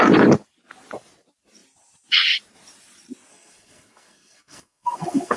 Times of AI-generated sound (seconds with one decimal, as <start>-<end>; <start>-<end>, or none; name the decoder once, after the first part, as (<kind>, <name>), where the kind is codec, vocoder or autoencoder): 3.3-5.4 (codec, SNAC)